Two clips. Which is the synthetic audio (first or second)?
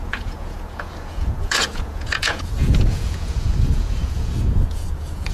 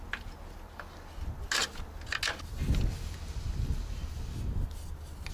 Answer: first